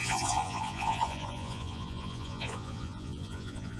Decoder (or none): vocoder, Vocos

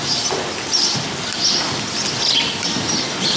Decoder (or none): none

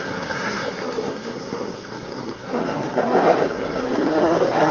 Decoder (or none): codec, SNAC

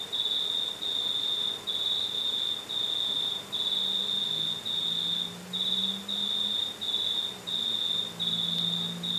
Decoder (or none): none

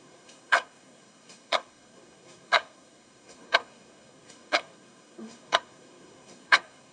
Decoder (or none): codec, SNAC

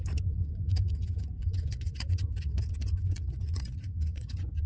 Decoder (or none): vocoder, Vocos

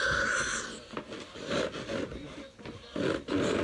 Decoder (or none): none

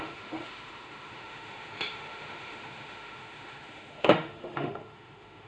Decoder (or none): autoencoder, DAC-VAE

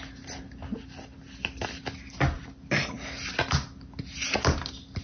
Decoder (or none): none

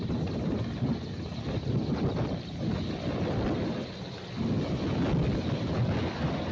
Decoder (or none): none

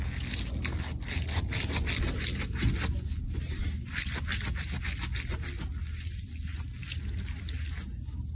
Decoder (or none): none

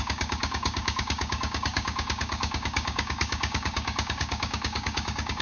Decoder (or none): codec, DAC